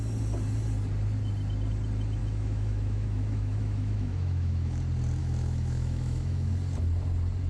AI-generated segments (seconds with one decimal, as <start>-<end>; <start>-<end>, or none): 2.2-4.8; 5.2-6.5